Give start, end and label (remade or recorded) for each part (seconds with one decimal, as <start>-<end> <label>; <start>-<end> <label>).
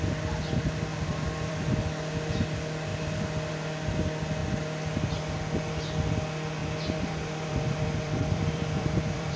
0.0-0.9 recorded; 0.9-1.6 remade; 1.6-6.6 recorded; 6.6-9.4 remade